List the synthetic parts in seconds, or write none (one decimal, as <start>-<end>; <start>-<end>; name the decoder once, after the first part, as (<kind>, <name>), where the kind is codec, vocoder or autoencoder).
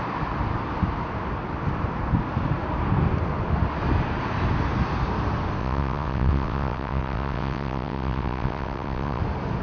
5.6-9.2 (vocoder, WaveNeXt)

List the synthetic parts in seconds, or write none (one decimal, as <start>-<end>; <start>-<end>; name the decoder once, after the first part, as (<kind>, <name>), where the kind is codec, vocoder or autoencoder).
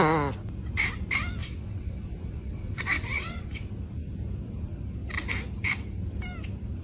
1.4-3.7 (vocoder, WaveNeXt)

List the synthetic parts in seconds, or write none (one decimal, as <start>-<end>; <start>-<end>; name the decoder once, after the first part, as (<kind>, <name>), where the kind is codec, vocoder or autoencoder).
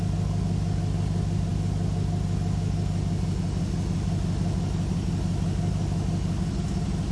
none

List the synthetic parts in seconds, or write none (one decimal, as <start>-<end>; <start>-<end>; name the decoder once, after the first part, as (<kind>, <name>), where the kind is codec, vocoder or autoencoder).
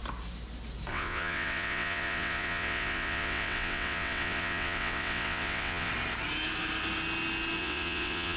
0.9-5.9 (vocoder, WaveNeXt); 7.6-8.4